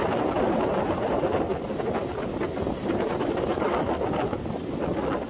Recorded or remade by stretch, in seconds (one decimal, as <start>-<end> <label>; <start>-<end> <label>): 0.0-1.2 remade; 1.2-5.3 recorded